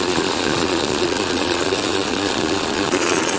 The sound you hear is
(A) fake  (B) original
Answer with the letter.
A